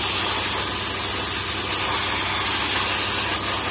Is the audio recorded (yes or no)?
yes